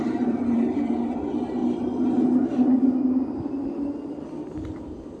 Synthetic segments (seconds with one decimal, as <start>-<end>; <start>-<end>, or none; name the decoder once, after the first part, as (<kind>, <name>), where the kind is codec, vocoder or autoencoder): 0.0-1.6 (vocoder, BigVGAN v2); 4.1-5.2